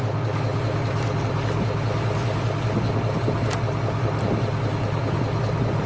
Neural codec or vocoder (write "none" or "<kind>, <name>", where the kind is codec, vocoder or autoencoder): none